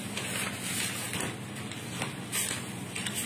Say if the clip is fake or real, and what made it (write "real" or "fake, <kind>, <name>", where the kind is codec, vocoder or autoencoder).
real